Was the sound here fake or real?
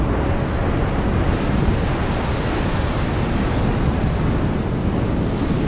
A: real